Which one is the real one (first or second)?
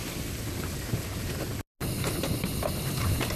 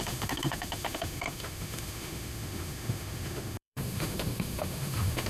first